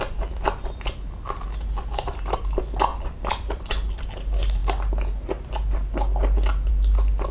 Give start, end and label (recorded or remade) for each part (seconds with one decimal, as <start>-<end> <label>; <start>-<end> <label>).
0.0-2.9 recorded; 2.9-4.1 remade; 4.1-7.3 recorded